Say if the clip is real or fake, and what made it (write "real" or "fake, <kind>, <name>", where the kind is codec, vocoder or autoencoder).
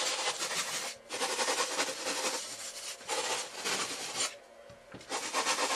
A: real